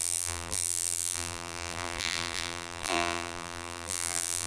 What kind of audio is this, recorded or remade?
remade